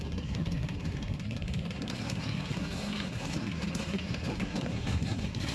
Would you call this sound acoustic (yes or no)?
no